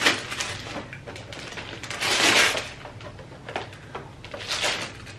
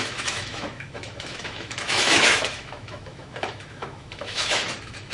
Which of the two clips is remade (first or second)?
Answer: second